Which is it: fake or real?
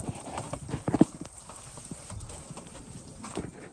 real